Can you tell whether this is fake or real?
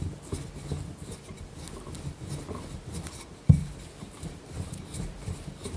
real